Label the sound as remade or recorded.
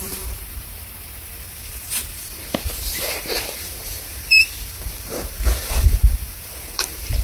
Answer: remade